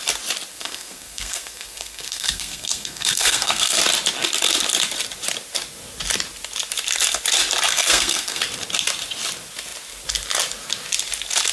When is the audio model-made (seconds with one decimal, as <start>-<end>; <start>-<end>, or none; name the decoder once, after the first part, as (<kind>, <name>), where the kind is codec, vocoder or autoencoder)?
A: 0.5-3.8 (codec, SNAC); 7.7-8.4